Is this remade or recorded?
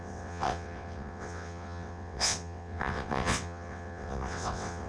remade